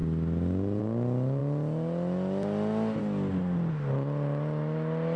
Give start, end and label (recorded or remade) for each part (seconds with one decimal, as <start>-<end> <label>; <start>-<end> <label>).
0.0-5.2 recorded